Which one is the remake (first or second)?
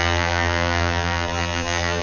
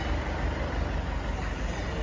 first